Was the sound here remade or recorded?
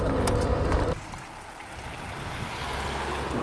recorded